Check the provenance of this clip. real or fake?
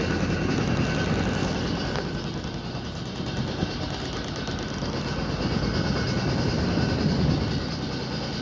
real